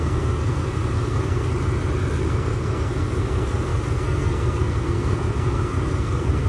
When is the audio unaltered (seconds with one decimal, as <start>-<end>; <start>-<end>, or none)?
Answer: 1.5-2.2